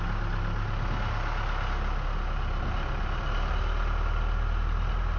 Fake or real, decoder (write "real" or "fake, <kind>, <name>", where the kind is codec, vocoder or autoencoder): real